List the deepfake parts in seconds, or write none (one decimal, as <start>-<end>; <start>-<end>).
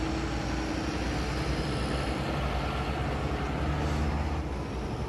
none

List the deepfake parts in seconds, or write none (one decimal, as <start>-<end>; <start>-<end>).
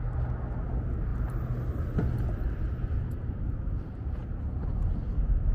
none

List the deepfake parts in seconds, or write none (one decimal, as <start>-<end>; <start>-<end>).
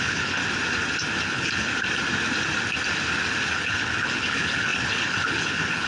0.0-0.4; 1.2-1.7; 3.5-5.9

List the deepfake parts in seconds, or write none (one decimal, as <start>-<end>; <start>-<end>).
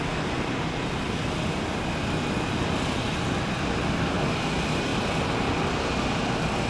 none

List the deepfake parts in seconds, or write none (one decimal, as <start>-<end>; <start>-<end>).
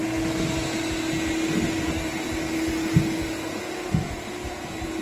3.6-4.1